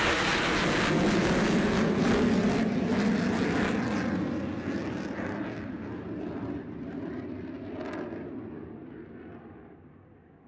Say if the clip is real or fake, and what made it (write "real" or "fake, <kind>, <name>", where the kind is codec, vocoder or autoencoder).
real